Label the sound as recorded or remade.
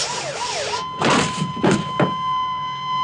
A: recorded